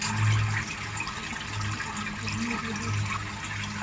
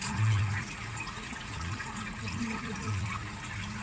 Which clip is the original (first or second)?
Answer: first